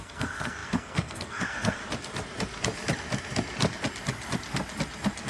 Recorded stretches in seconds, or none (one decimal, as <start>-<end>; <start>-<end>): 1.8-5.3